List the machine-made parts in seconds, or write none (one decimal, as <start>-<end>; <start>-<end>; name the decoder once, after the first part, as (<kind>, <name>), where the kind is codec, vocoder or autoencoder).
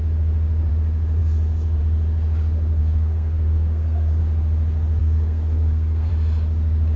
2.8-4.2 (codec, SNAC); 5.0-6.1